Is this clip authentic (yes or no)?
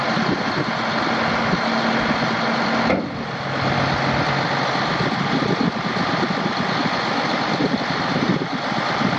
yes